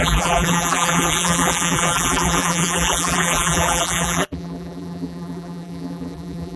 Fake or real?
fake